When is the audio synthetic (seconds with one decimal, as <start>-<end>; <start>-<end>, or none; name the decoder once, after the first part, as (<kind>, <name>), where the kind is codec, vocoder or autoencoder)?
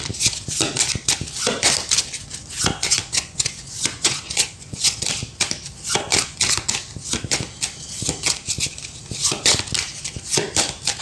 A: 3.0-4.8 (vocoder, Vocos)